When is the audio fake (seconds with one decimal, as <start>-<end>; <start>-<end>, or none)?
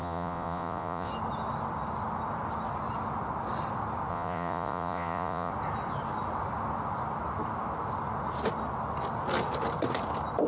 0.0-1.1; 4.1-5.5